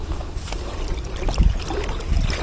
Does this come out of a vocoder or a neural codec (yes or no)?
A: no